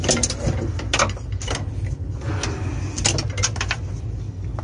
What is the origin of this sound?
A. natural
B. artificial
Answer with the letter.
A